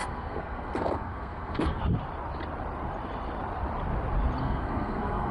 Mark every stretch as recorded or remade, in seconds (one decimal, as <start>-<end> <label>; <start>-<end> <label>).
0.0-1.8 remade; 1.8-4.4 recorded; 4.4-5.3 remade